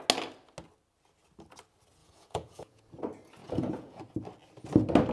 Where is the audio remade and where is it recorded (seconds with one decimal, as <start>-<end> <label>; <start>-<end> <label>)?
0.0-2.0 recorded; 2.0-2.8 remade; 2.8-3.4 recorded; 3.4-4.0 remade; 4.0-5.1 recorded

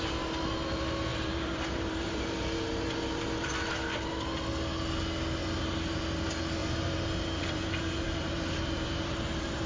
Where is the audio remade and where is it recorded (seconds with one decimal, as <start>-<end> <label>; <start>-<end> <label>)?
0.0-1.1 recorded; 1.1-3.5 remade; 3.5-5.4 recorded; 5.4-6.0 remade; 6.0-6.6 recorded; 6.6-9.7 remade

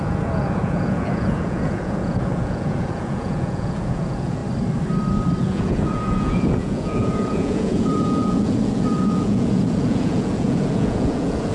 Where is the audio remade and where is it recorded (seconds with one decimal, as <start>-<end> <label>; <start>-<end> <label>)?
0.0-4.4 remade; 4.4-5.4 recorded; 5.4-11.5 remade

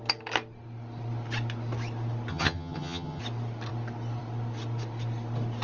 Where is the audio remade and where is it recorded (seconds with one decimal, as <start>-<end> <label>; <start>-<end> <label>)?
0.0-2.3 recorded; 2.3-3.2 remade; 3.2-5.6 recorded

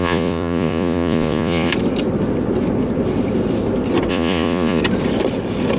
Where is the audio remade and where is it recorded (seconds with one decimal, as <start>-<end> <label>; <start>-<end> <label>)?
0.0-1.7 remade; 1.7-4.1 recorded; 4.1-4.8 remade; 4.8-5.8 recorded

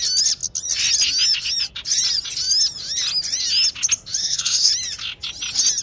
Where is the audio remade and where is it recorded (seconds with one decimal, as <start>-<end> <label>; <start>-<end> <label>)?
0.0-4.2 recorded; 4.2-4.7 remade; 4.7-5.8 recorded